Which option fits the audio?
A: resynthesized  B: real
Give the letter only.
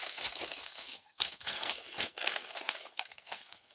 A